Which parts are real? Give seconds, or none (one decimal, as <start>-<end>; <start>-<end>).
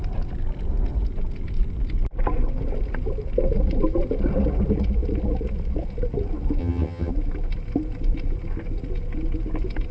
0.0-6.6; 7.1-9.9